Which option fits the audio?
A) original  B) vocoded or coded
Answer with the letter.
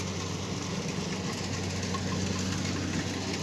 A